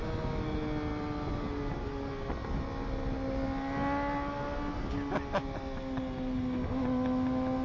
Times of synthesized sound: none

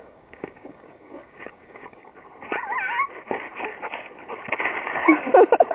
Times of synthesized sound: 0.0-2.1 (codec, DAC)

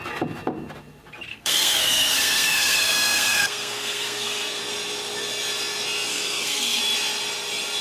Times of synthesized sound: 1.3-4.6 (codec, SNAC); 6.1-6.8

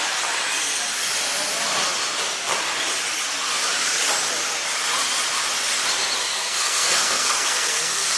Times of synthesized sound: 6.2-8.2 (codec, SNAC)